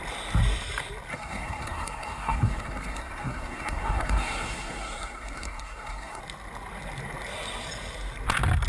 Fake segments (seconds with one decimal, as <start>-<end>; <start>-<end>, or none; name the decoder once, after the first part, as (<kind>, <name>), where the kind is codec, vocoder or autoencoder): 1.1-6.2 (codec, SNAC)